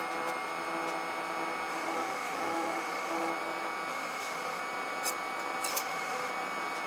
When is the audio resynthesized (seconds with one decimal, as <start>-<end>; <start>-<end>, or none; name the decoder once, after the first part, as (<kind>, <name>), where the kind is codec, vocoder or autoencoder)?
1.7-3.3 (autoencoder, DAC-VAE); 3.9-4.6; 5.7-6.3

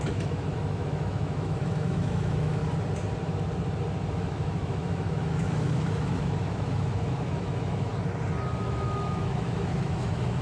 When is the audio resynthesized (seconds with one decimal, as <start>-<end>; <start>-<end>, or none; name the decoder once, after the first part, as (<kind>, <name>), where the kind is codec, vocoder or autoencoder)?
0.0-2.6 (autoencoder, DAC-VAE); 4.1-7.9; 8.6-10.4

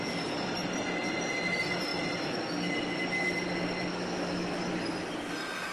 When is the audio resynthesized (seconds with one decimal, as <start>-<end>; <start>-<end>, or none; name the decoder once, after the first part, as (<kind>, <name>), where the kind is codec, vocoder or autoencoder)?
1.9-2.4 (autoencoder, DAC-VAE); 3.9-4.6

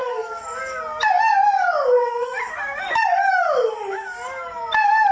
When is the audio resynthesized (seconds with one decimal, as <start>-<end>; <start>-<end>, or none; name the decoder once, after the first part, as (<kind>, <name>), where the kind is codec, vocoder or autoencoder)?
0.0-0.6 (autoencoder, DAC-VAE); 2.0-4.6

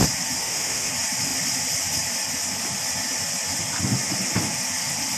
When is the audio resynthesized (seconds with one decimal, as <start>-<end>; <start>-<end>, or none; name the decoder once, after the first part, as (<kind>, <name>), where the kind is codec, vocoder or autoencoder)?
0.4-0.9 (autoencoder, DAC-VAE)

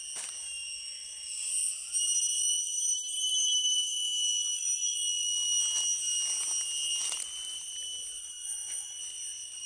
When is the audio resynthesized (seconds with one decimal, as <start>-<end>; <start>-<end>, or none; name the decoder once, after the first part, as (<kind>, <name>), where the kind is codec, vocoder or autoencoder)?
0.4-1.5 (autoencoder, DAC-VAE); 2.4-5.6; 8.2-9.0